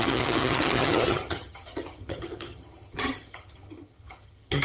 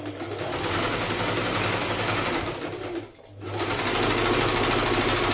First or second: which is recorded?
second